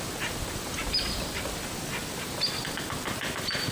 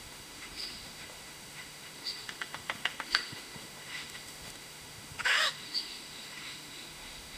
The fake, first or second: second